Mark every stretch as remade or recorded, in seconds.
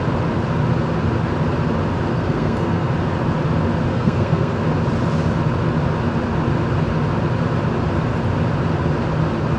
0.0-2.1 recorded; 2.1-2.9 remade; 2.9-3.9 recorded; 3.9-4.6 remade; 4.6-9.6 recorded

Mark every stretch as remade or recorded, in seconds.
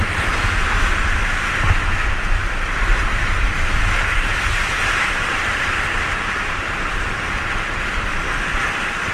0.0-2.4 recorded; 2.4-3.8 remade; 3.8-4.5 recorded; 4.5-5.8 remade; 5.8-9.1 recorded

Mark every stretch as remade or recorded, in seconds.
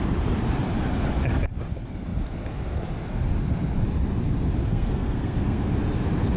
0.0-4.7 recorded; 4.7-5.7 remade; 5.7-6.4 recorded